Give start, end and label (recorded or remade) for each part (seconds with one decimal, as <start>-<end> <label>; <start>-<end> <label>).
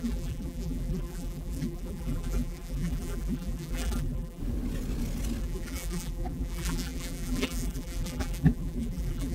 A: 0.0-4.4 remade; 4.4-5.4 recorded; 5.4-9.3 remade